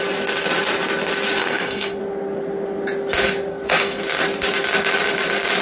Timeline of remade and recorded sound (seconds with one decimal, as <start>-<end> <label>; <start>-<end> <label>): 0.0-1.4 recorded; 1.4-2.0 remade; 2.0-3.5 recorded; 3.5-4.0 remade; 4.0-5.6 recorded